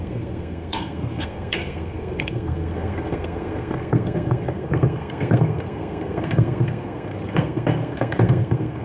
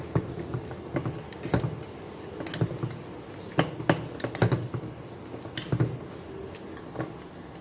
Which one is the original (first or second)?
second